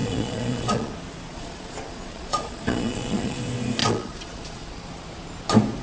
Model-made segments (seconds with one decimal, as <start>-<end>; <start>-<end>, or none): 0.0-0.9; 1.3-3.4; 3.8-4.9